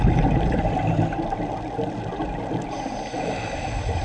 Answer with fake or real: real